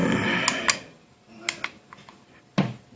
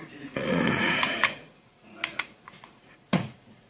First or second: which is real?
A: first